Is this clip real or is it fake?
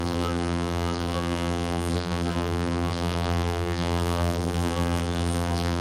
fake